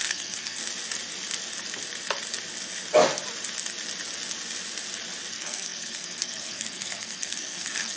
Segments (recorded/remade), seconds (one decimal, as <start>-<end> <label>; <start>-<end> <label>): 0.0-0.6 remade; 0.6-5.3 recorded; 5.3-8.0 remade